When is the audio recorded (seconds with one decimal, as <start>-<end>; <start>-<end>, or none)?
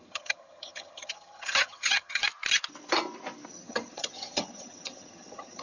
2.2-3.5